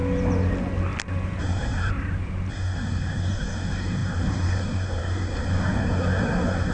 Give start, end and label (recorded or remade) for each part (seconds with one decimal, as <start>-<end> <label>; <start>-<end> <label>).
0.0-1.4 recorded; 1.4-1.9 remade; 1.9-2.5 recorded; 2.5-6.7 remade